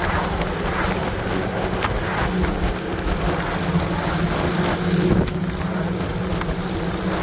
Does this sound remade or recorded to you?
recorded